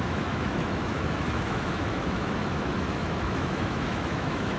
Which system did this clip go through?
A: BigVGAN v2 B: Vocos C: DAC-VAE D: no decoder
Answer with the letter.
C